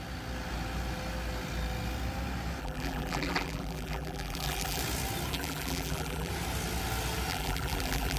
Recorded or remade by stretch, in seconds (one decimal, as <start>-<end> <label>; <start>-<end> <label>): 0.0-2.6 recorded; 2.6-4.8 remade; 4.8-5.3 recorded; 5.3-6.3 remade; 6.3-7.3 recorded; 7.3-8.2 remade